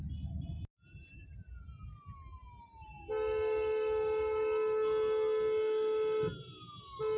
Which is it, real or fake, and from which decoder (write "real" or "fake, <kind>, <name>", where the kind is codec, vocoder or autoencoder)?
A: real